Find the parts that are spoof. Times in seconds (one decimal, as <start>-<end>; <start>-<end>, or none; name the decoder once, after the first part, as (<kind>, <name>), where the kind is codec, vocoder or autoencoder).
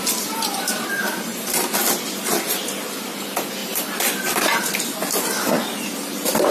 3.6-4.6 (vocoder, BigVGAN v2)